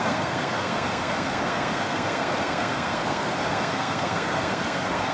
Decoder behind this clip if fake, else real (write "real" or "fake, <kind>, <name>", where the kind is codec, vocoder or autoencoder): fake, codec, SNAC